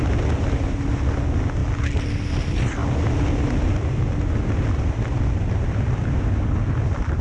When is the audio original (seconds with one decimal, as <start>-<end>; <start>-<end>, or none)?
0.0-7.2